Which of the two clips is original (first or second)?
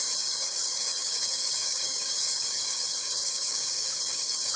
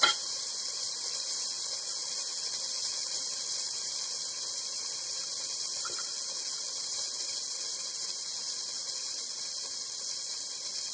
second